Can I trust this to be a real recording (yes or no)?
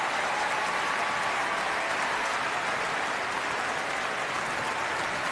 yes